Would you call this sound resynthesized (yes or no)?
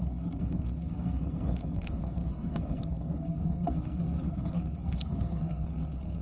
yes